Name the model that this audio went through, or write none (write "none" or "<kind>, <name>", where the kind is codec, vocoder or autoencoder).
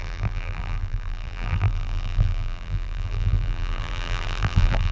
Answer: vocoder, BigVGAN v2